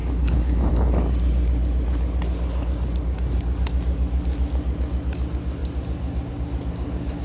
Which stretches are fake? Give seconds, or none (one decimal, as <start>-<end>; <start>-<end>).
0.0-0.7